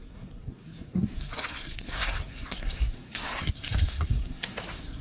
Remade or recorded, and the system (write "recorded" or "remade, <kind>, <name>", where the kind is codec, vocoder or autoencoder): remade, codec, SNAC